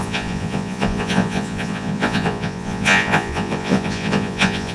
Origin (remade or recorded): remade